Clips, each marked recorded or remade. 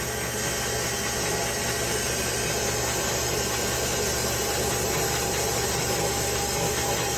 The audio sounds recorded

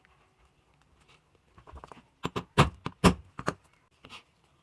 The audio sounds recorded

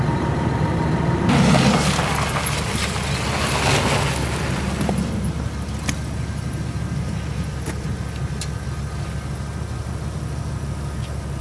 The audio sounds recorded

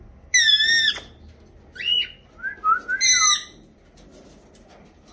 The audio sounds recorded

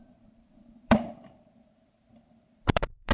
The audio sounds remade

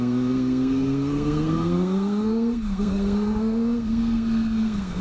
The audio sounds remade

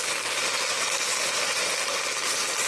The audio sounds recorded